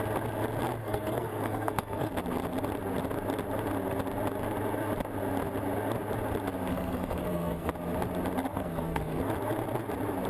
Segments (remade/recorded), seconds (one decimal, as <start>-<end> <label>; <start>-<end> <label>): 0.0-0.8 recorded; 0.8-2.1 remade; 2.1-6.7 recorded; 6.7-7.7 remade; 7.7-8.5 recorded; 8.5-9.3 remade; 9.3-10.3 recorded